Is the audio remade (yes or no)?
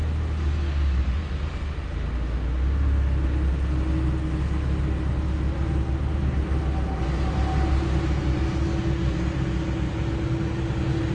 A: no